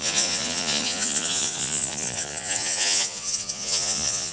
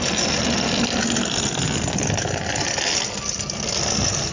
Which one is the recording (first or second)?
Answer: second